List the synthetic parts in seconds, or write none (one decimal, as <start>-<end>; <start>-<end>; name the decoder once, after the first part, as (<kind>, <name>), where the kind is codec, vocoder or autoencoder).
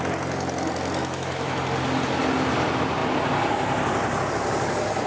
1.0-1.5 (autoencoder, DAC-VAE)